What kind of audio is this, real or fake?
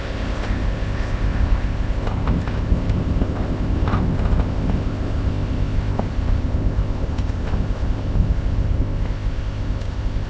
fake